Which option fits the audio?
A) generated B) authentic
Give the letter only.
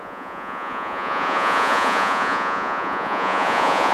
A